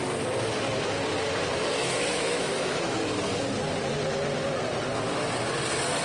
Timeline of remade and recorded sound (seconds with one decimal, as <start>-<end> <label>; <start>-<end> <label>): 0.0-1.8 recorded; 1.8-3.0 remade; 3.0-6.0 recorded